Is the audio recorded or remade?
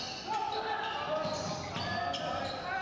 recorded